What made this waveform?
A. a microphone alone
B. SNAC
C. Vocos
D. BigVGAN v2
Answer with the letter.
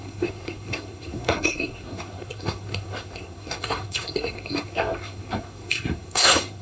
B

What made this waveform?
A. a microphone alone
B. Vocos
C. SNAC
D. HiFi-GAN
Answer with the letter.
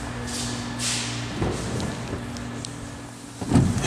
A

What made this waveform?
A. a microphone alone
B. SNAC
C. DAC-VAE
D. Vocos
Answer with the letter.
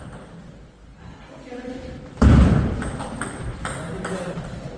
A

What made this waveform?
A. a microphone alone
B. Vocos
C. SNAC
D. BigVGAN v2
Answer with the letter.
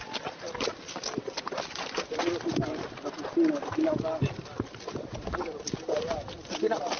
A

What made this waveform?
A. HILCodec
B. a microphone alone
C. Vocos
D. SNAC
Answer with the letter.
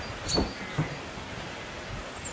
B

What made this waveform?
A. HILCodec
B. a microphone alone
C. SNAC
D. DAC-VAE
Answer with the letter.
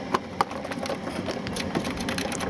B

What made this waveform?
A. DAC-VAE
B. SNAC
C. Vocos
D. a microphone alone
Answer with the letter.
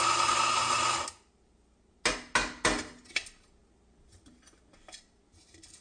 D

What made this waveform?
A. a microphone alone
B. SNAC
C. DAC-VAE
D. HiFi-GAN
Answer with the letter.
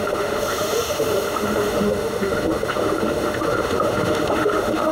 C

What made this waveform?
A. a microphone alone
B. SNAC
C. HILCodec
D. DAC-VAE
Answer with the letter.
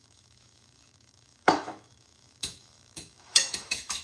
D